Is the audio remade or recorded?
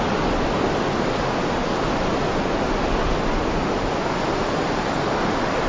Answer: recorded